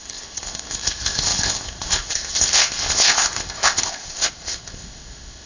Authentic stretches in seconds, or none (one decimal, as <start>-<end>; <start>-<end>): none